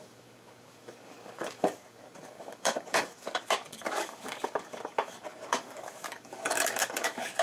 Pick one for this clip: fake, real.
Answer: fake